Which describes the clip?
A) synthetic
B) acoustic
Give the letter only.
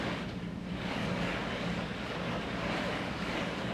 A